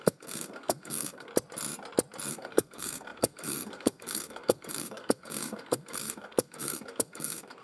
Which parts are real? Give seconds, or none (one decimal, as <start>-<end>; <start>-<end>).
1.3-2.3